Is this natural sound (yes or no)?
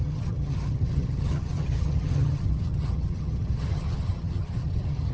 no